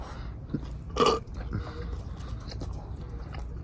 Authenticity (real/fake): real